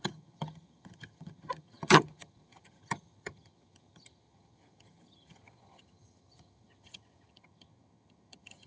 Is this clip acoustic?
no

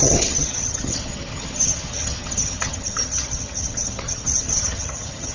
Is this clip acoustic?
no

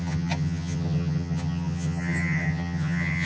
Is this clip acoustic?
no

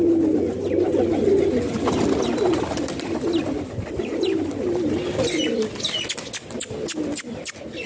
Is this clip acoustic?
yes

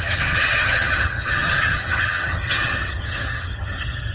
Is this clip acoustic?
no